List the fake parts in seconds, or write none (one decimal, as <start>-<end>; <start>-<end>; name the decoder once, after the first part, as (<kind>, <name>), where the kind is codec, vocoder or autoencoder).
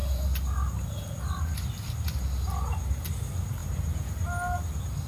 none